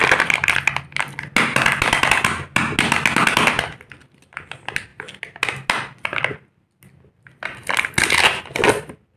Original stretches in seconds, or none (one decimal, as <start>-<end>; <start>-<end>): 0.0-9.2